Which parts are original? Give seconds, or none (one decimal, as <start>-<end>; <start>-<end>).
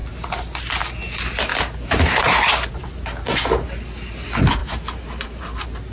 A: 0.6-1.5; 3.3-4.6; 5.4-5.9